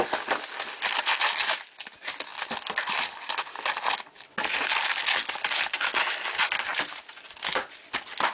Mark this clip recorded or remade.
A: recorded